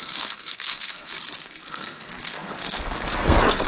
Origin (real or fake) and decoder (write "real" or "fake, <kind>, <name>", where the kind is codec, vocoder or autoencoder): fake, codec, SNAC